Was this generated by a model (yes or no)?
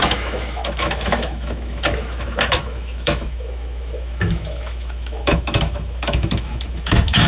yes